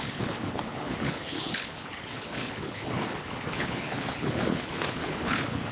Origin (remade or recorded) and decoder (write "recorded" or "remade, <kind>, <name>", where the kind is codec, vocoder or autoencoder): remade, codec, HILCodec